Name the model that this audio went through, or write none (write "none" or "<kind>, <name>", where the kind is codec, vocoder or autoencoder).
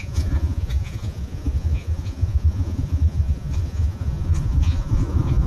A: vocoder, Vocos